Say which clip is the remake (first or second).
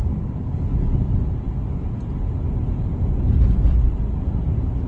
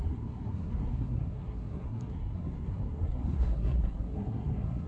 second